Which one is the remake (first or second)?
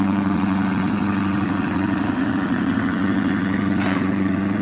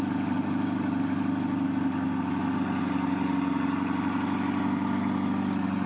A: first